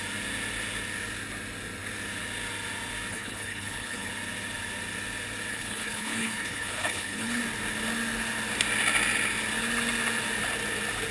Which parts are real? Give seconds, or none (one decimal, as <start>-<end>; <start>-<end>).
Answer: 0.0-3.1; 4.1-5.5; 7.4-11.1